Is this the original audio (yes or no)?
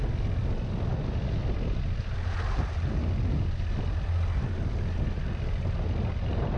yes